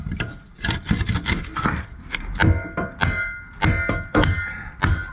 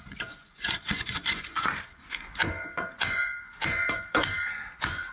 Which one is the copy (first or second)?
second